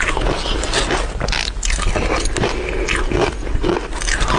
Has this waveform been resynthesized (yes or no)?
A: no